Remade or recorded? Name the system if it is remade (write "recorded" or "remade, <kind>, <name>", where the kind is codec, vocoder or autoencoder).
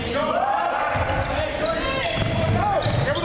recorded